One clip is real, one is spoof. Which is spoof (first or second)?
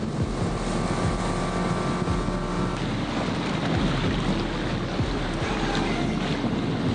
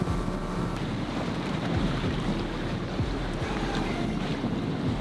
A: second